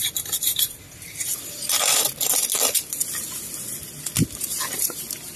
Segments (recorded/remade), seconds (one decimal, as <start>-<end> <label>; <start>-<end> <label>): 0.0-2.4 remade; 2.4-4.4 recorded; 4.4-5.4 remade